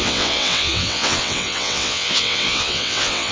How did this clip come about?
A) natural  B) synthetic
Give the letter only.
B